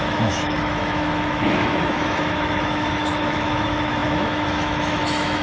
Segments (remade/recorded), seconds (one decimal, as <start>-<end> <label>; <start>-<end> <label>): 0.0-5.4 remade